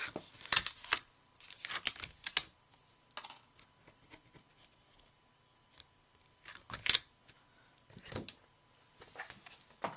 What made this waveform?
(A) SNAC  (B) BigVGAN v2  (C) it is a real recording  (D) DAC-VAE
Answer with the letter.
C